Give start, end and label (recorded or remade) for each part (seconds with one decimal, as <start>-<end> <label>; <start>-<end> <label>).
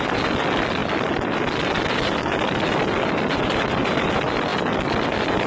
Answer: 0.0-5.5 recorded